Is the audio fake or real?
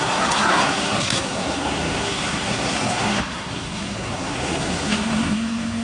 fake